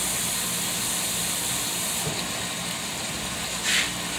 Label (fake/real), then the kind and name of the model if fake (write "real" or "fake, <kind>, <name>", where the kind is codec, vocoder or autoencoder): real